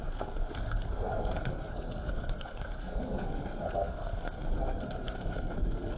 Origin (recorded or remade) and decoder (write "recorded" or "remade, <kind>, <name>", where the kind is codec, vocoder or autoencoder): remade, codec, SNAC